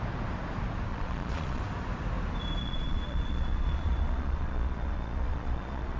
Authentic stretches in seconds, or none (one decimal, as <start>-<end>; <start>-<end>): 0.0-0.9; 1.6-2.6

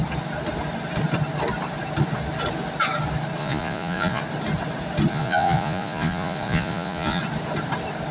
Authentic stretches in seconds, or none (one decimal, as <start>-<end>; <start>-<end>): 0.0-3.4; 4.2-5.1; 7.2-8.1

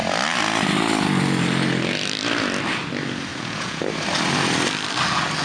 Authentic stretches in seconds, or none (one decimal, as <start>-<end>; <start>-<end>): 0.0-3.3; 3.8-5.4

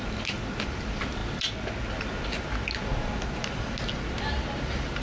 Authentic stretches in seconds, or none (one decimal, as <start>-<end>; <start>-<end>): 0.0-5.0